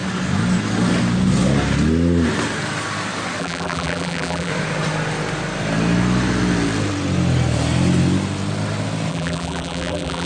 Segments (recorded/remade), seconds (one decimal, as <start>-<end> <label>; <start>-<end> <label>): 0.0-3.4 recorded; 3.4-4.5 remade; 4.5-9.1 recorded; 9.1-10.3 remade